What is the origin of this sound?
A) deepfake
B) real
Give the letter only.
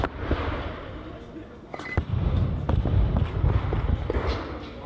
B